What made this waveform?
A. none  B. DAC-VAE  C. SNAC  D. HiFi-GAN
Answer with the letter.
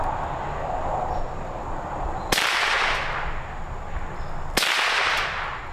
A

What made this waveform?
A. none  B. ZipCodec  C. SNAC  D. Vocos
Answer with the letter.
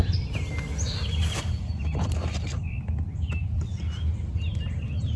A